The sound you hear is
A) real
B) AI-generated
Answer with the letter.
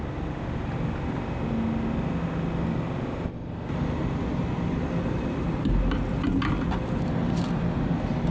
A